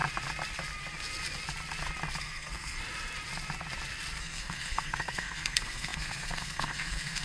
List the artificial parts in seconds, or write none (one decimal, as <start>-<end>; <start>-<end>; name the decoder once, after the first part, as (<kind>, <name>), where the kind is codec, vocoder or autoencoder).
2.2-2.8 (codec, SNAC); 4.2-7.2